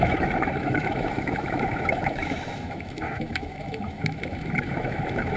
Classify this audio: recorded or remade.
remade